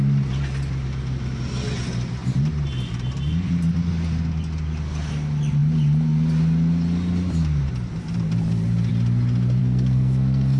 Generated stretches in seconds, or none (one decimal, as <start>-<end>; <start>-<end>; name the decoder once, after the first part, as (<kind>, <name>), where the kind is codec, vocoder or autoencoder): 9.6-10.6 (codec, SNAC)